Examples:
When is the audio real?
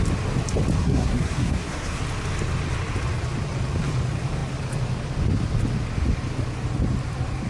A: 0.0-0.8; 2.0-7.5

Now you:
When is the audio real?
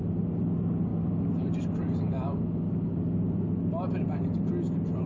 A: 0.0-5.1